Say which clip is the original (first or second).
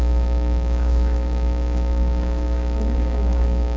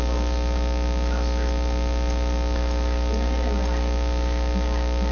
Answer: second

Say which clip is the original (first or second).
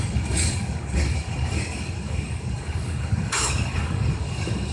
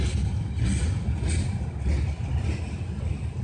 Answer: second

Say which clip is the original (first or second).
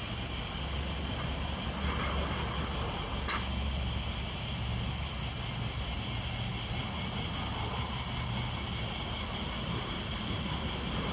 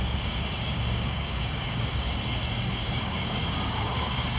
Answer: first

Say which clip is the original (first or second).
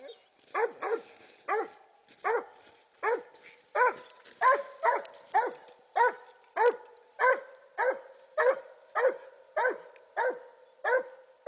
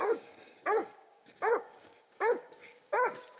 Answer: first